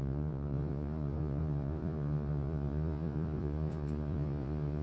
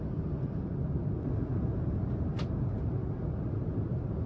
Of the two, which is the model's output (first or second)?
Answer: first